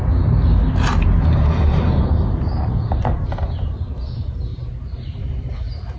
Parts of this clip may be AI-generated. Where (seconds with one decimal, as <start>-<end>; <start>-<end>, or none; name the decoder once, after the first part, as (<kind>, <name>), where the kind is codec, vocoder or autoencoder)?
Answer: 0.9-6.0 (vocoder, BigVGAN v2)